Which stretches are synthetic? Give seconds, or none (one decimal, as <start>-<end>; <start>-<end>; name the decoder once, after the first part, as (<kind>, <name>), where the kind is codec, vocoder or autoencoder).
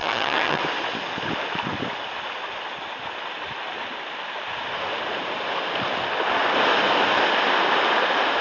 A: 0.0-0.6 (vocoder, HiFi-GAN)